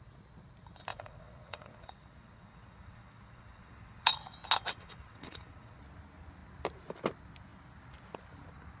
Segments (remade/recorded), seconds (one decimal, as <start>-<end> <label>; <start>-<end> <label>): 0.0-0.9 recorded; 0.9-4.2 remade; 4.2-4.7 recorded; 4.7-5.8 remade; 5.8-8.8 recorded